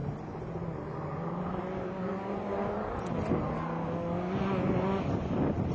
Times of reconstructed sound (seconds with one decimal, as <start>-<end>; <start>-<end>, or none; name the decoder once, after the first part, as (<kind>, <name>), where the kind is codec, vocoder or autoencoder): none